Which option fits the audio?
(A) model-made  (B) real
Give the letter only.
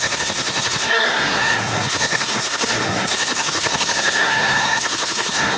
A